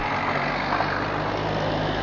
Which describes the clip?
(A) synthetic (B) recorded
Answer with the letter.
B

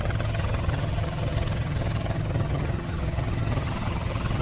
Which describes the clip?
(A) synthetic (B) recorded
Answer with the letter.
A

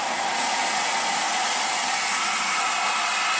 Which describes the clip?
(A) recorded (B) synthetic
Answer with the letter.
A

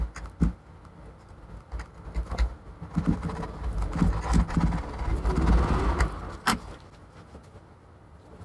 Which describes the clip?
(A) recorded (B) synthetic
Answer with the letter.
A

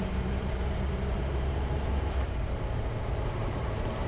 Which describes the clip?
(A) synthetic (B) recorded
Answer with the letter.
A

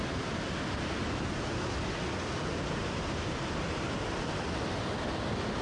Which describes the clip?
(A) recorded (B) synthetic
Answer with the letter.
A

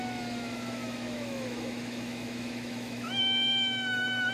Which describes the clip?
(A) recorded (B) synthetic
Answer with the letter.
B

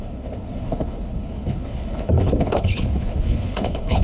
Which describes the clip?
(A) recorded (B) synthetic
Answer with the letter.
B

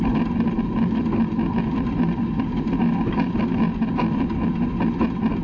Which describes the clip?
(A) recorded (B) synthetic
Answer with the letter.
A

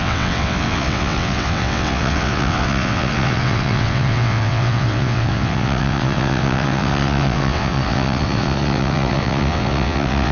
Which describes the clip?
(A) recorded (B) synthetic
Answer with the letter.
B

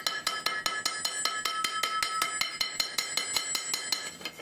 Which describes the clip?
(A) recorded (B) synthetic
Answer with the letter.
A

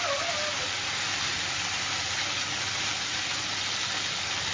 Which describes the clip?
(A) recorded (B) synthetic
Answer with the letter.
A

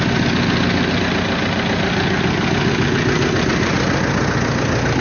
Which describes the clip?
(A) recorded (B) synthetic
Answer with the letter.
A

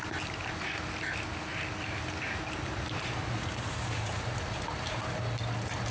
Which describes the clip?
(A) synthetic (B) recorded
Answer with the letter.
B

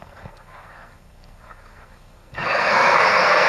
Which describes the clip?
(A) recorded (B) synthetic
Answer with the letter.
B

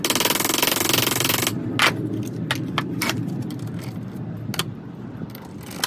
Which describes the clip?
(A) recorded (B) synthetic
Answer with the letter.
A